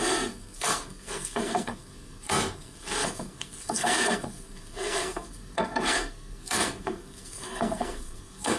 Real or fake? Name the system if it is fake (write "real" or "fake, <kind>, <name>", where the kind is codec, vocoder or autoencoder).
fake, codec, SNAC